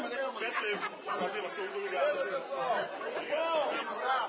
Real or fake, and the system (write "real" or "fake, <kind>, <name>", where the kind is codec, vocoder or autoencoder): real